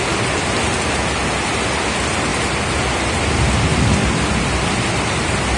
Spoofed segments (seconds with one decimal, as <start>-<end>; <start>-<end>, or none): none